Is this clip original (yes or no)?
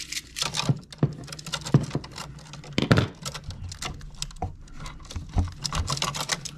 yes